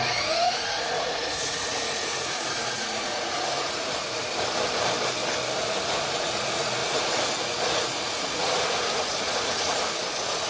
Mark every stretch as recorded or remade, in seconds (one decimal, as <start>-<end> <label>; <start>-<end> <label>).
0.0-4.2 remade; 4.2-5.6 recorded; 5.6-10.5 remade